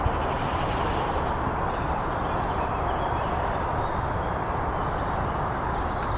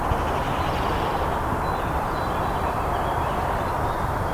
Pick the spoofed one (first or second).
second